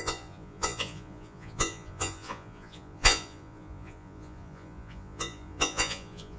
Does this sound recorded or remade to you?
remade